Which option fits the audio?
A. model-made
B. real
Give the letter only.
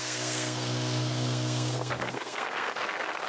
A